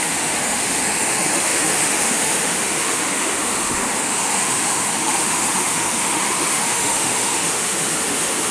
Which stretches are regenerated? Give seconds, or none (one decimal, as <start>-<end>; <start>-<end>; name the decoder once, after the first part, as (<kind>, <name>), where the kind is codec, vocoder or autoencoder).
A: 0.0-8.5 (autoencoder, DAC-VAE)